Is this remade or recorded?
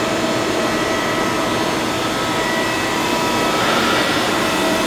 recorded